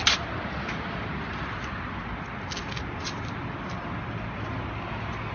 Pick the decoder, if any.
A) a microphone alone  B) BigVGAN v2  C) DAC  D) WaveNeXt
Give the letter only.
A